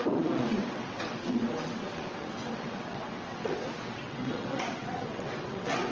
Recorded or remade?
remade